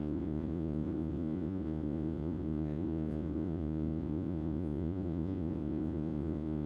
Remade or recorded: remade